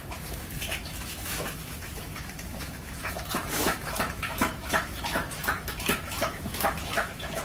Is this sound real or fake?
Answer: fake